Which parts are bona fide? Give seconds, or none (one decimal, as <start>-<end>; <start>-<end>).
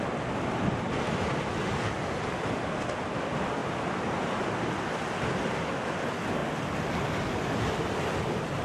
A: 0.0-8.6